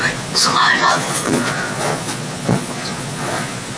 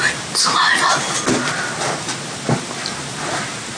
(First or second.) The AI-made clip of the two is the first